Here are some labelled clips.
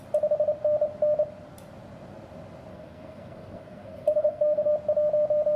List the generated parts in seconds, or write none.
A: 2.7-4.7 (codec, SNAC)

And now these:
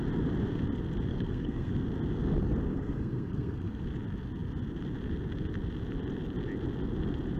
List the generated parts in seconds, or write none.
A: 1.1-1.7 (codec, SNAC); 2.7-3.8

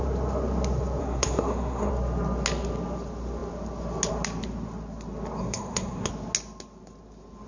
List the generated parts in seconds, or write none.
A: 1.0-1.9 (codec, SNAC); 5.4-6.1

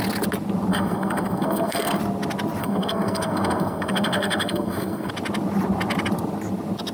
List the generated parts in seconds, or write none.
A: 0.7-2.0 (codec, SNAC); 2.6-5.1

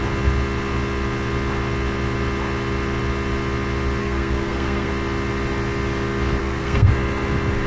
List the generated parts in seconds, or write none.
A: 4.0-4.9 (codec, SNAC); 6.4-6.9

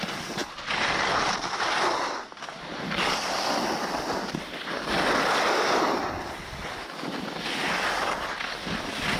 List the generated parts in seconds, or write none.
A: none

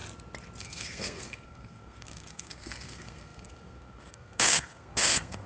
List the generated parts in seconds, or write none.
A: 0.6-5.5 (codec, SNAC)

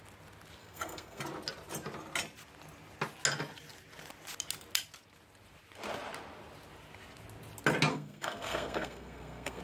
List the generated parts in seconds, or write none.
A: 0.6-1.2 (codec, SNAC); 7.9-9.6